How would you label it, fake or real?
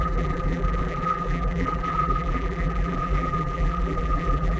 fake